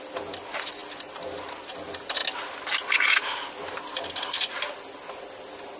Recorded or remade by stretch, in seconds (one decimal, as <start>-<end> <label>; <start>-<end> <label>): 0.0-5.8 recorded